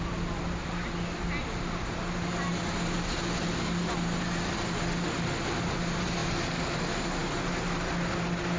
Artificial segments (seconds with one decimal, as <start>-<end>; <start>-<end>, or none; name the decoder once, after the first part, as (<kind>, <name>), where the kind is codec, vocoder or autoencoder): none